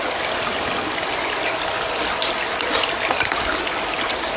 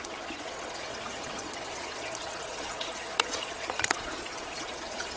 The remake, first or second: second